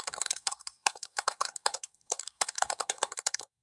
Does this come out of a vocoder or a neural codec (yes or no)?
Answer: yes